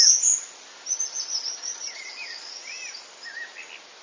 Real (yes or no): yes